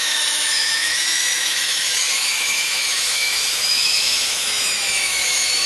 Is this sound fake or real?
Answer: fake